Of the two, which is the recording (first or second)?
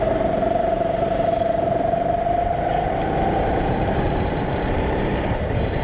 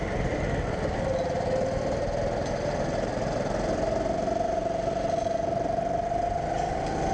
second